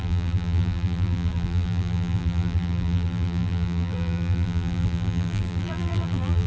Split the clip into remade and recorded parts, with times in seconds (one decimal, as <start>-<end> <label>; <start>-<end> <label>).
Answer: 0.0-6.5 remade

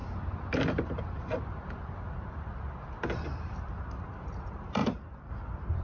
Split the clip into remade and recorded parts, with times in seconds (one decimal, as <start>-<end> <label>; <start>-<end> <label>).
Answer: 0.0-4.8 recorded; 4.8-5.3 remade; 5.3-5.8 recorded

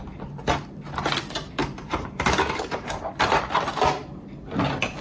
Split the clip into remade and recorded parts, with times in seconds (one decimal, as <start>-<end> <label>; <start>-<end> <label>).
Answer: 0.0-1.6 recorded; 1.6-3.7 remade; 3.7-5.0 recorded

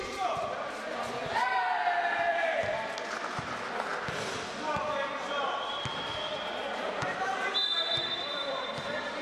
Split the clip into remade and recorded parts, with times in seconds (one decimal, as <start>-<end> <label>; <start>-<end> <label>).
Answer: 0.0-3.9 remade; 3.9-5.4 recorded; 5.4-9.2 remade

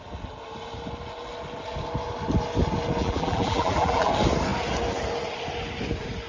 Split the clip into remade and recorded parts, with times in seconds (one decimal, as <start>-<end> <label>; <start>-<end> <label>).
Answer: 0.0-3.0 recorded; 3.0-4.1 remade; 4.1-6.3 recorded

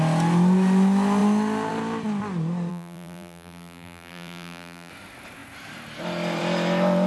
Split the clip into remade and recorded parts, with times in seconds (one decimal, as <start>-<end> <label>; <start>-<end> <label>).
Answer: 0.0-2.7 recorded; 2.7-4.9 remade; 4.9-7.1 recorded